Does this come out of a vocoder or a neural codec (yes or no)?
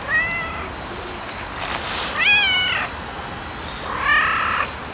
no